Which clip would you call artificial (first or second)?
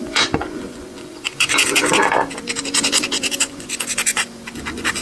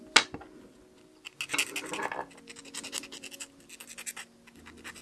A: first